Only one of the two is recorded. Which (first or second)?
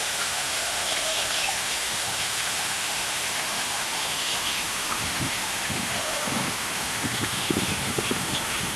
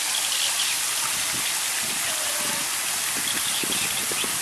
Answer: second